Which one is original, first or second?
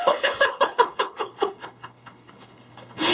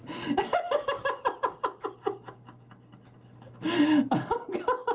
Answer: second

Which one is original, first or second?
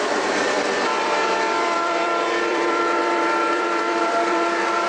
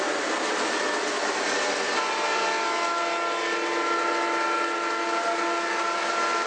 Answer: second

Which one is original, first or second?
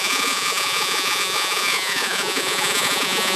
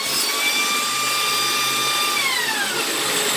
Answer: second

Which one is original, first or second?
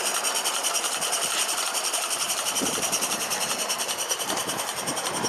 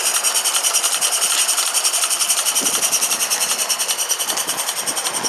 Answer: second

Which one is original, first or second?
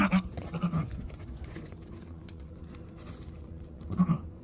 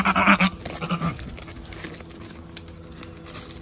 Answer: second